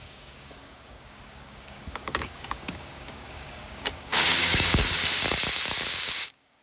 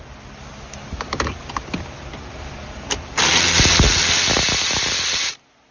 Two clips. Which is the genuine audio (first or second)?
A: second